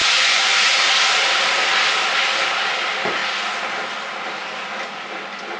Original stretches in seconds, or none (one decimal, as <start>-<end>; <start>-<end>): 0.5-5.6